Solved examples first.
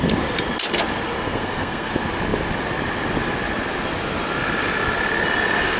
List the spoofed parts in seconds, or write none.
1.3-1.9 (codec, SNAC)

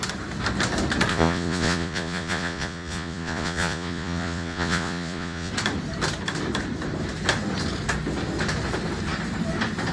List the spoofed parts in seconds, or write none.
1.1-5.5 (vocoder, Vocos)

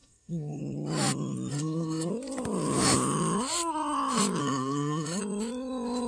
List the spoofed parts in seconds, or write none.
0.0-0.6 (codec, SNAC); 1.5-2.1; 4.4-5.2

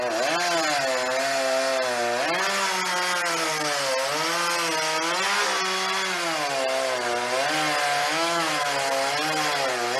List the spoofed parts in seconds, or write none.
8.0-8.6 (autoencoder, DAC-VAE)

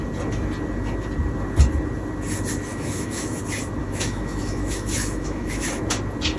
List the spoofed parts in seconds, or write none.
2.7-3.4 (autoencoder, DAC-VAE); 3.8-5.8

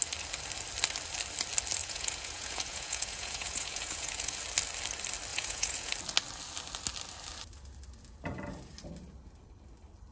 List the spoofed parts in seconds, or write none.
1.8-4.4 (vocoder, Vocos); 5.3-5.9

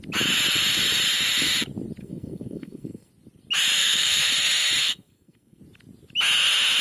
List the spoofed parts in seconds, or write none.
2.0-3.1 (codec, SNAC); 3.8-4.3; 4.8-5.6